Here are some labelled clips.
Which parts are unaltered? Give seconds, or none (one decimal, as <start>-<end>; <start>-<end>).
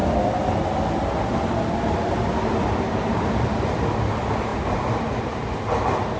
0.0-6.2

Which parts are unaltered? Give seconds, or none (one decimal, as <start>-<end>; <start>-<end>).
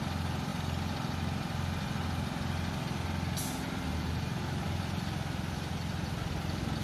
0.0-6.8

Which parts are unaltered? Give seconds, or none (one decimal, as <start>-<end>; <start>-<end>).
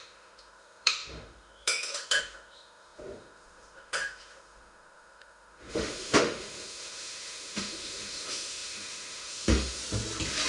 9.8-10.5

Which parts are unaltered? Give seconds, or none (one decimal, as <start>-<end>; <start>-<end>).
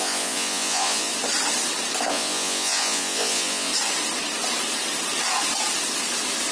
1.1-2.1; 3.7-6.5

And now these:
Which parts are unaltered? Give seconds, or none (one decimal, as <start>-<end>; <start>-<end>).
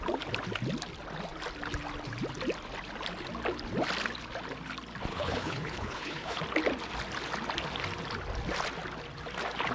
0.0-5.1; 6.4-9.7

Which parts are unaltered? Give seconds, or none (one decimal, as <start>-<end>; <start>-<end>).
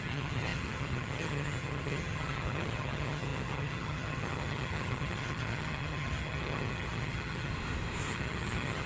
7.5-8.1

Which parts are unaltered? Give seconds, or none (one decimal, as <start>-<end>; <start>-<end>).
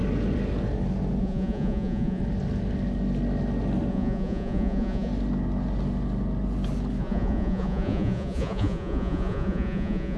0.0-1.2; 2.2-3.9; 5.1-7.0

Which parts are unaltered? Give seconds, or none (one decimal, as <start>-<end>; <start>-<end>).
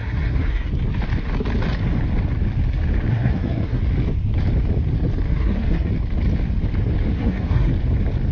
0.7-3.1; 3.8-5.3; 5.9-7.1; 7.7-8.3